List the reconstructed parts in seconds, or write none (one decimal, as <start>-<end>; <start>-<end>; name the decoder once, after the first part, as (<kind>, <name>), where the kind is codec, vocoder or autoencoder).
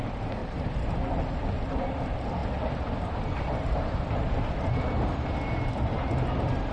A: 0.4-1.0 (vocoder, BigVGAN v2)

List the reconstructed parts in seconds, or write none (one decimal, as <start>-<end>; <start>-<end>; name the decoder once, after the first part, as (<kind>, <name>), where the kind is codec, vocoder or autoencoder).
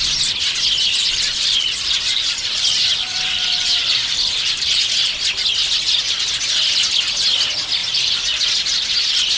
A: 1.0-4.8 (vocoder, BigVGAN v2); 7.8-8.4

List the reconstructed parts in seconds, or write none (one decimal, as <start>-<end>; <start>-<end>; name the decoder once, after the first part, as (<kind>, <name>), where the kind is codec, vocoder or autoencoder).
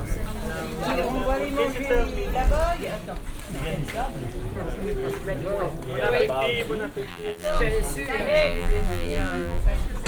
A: 7.1-7.6 (vocoder, BigVGAN v2); 8.3-9.6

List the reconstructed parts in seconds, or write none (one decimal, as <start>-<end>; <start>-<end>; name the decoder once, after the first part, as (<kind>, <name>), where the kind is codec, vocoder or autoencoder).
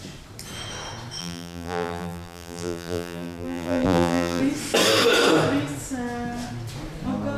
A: 1.2-4.4 (vocoder, BigVGAN v2)